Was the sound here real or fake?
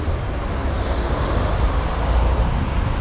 real